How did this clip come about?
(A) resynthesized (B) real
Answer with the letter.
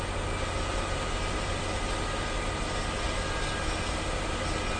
B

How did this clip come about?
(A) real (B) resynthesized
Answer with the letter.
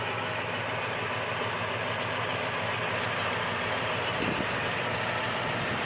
A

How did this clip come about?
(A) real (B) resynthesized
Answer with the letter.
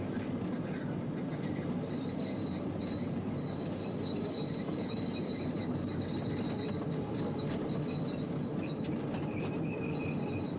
B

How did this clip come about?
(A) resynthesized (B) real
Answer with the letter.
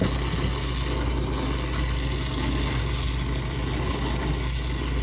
B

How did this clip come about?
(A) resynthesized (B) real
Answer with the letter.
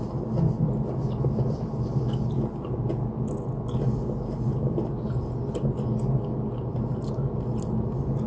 B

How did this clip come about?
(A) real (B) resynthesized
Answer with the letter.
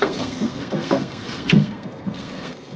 B